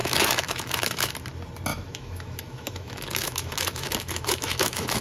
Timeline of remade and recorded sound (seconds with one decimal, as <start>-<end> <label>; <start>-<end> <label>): 0.0-1.1 remade; 1.1-1.7 recorded; 1.7-5.0 remade